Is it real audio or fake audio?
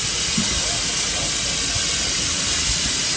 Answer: real